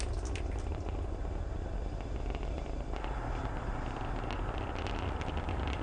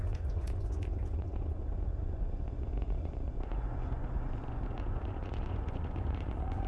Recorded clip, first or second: first